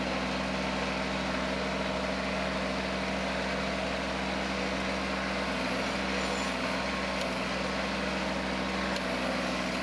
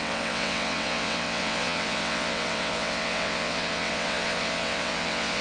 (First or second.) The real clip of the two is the first